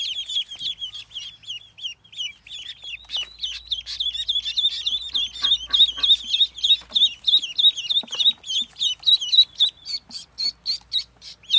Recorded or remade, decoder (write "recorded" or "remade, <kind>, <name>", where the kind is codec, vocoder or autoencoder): recorded